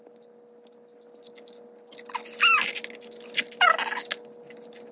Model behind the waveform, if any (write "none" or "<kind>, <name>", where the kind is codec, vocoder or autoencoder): none